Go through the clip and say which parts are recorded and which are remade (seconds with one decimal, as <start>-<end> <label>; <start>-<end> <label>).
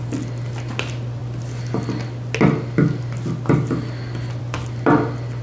0.0-5.4 recorded